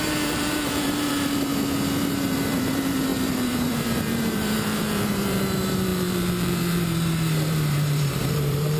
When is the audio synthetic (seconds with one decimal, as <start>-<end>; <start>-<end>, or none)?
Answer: 0.0-1.5; 2.0-8.8